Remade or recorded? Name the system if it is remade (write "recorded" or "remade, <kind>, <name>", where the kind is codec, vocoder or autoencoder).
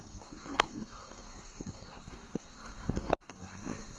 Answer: remade, codec, SNAC